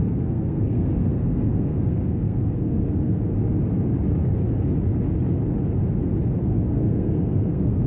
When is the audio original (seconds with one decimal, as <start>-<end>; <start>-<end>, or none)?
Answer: 3.3-6.4